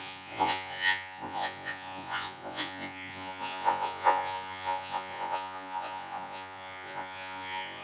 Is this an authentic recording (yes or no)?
no